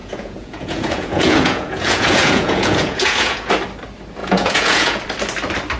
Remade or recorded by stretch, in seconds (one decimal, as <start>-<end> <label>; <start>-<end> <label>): 0.0-3.5 remade; 3.5-4.2 recorded; 4.2-5.0 remade; 5.0-5.8 recorded